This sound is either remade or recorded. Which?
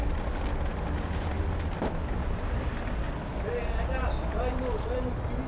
recorded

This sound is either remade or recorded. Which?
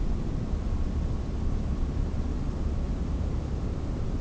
recorded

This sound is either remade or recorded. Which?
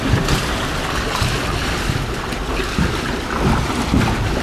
recorded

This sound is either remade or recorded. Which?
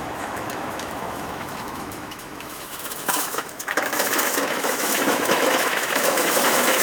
remade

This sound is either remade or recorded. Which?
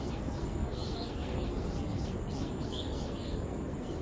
remade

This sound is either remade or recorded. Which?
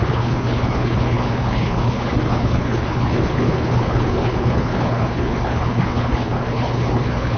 remade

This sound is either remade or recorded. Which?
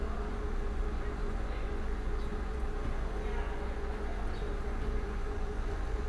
remade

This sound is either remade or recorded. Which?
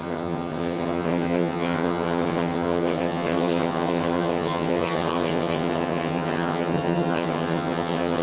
remade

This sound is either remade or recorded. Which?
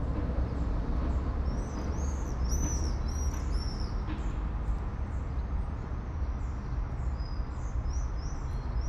recorded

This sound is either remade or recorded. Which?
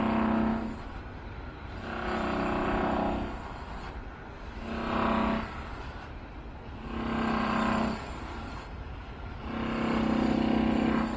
recorded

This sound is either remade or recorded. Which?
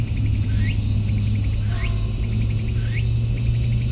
recorded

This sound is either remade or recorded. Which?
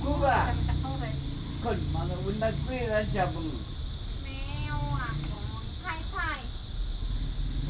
recorded